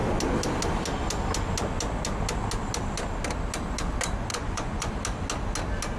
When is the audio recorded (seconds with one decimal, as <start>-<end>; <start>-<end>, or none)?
0.0-4.3; 4.9-6.0